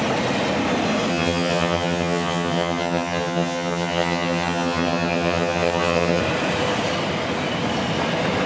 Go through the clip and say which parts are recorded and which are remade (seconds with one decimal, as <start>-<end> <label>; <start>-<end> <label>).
0.0-1.1 recorded; 1.1-6.2 remade; 6.2-8.5 recorded